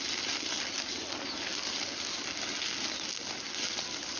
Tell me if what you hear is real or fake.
real